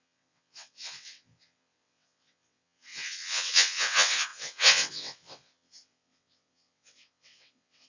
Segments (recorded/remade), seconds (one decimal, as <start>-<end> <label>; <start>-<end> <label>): 0.0-7.9 remade